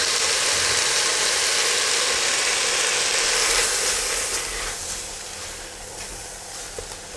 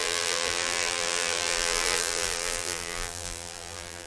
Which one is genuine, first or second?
first